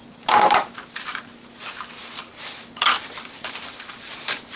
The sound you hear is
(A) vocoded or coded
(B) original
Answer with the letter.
B